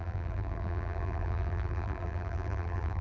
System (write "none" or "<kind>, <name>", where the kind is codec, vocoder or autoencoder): vocoder, BigVGAN v2